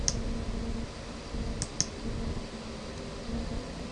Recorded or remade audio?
recorded